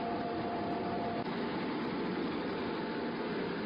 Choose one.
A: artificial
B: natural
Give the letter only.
B